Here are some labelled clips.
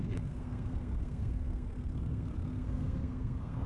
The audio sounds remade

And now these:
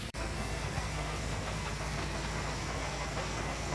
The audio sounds remade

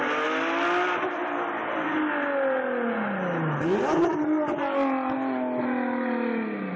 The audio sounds recorded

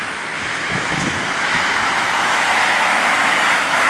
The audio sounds remade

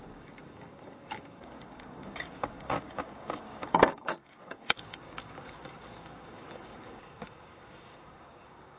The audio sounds remade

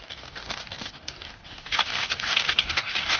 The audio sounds remade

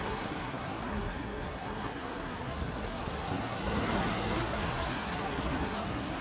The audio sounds remade